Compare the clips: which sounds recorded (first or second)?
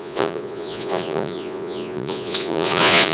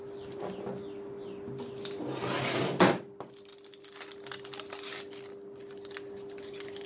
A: second